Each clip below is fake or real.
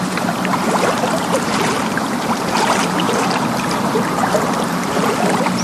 fake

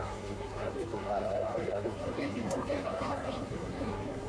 fake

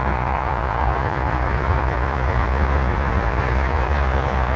fake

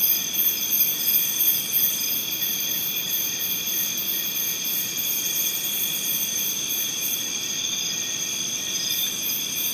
fake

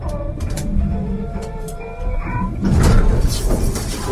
fake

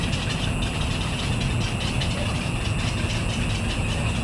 real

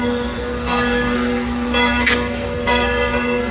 fake